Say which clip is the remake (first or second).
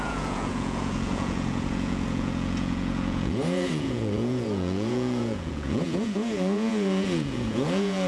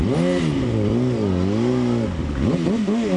first